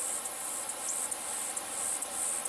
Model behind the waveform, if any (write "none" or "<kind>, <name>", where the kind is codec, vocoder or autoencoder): none